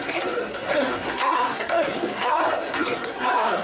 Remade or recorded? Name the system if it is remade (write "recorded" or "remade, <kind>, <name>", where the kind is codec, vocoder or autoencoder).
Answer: remade, codec, SNAC